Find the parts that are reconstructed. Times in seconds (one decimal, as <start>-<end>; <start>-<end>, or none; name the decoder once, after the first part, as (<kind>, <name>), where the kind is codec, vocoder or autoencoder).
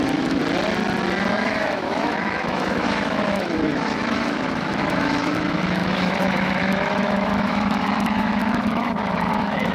0.0-0.4 (autoencoder, DAC-VAE); 1.3-9.7